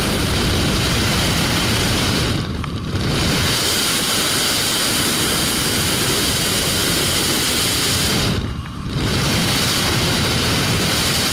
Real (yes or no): no